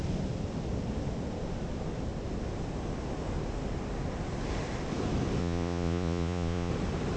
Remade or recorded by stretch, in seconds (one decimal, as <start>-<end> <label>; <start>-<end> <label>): 0.0-5.4 recorded; 5.4-6.7 remade; 6.7-7.2 recorded